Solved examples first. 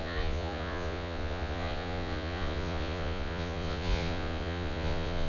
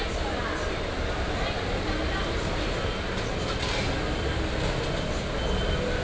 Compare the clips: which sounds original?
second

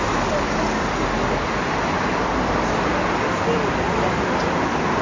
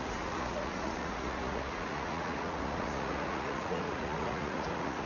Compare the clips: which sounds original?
first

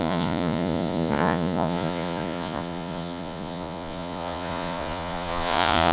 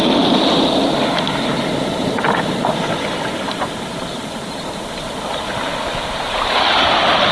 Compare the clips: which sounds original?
second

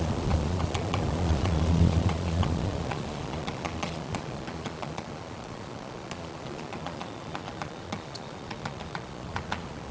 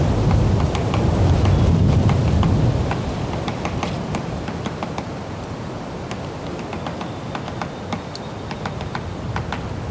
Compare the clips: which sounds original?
second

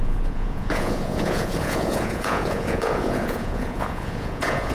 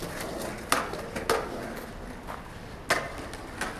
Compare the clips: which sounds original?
second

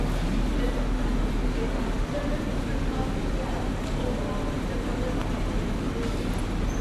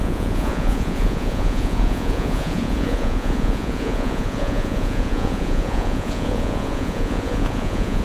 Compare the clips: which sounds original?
first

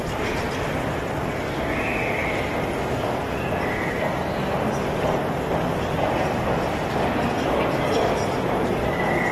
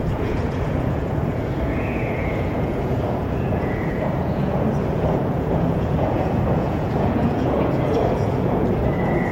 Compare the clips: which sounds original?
first